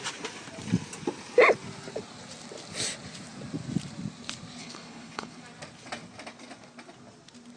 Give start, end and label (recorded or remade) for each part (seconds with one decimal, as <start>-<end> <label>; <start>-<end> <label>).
0.0-4.6 recorded; 4.6-5.4 remade; 5.4-7.6 recorded